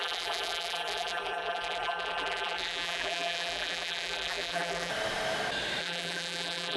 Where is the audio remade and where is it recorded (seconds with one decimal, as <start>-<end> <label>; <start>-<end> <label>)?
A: 0.0-4.9 remade; 4.9-5.8 recorded; 5.8-6.8 remade